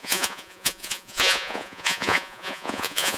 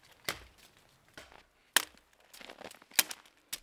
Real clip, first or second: second